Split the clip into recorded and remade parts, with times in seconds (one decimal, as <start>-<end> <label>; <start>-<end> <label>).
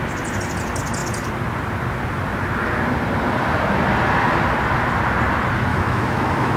0.0-5.7 recorded; 5.7-6.6 remade